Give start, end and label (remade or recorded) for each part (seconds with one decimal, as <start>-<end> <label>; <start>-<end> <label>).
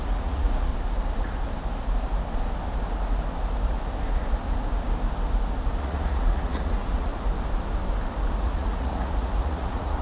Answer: 0.0-0.7 remade; 0.7-5.8 recorded; 5.8-7.1 remade; 7.1-8.4 recorded; 8.4-10.0 remade